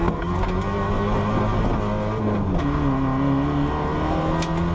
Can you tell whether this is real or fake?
real